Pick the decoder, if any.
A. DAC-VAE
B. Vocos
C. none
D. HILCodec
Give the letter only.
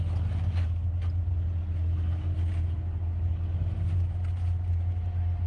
C